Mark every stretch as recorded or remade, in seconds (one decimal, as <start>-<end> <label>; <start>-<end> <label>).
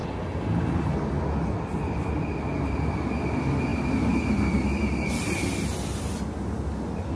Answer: 0.0-7.2 recorded